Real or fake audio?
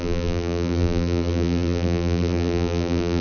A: fake